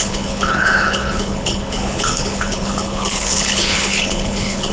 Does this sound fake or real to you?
fake